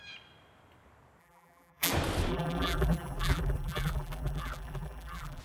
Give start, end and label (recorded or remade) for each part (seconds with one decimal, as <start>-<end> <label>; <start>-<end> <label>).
0.0-1.2 recorded; 1.2-1.9 remade; 1.9-2.3 recorded; 2.3-5.4 remade